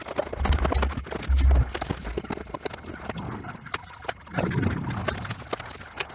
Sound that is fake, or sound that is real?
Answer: real